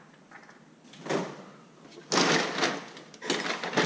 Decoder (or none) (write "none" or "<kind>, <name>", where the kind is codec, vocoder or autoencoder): none